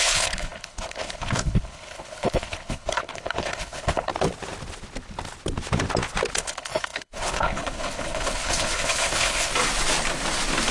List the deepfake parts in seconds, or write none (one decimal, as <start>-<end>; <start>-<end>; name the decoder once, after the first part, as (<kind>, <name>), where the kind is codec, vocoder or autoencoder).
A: 0.0-4.1 (codec, HILCodec); 6.4-9.5